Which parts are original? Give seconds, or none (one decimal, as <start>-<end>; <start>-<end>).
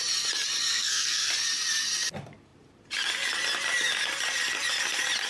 0.0-0.7; 1.3-5.3